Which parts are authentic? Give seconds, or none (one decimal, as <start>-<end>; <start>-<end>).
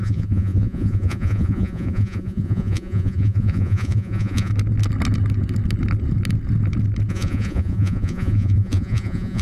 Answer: 4.5-7.1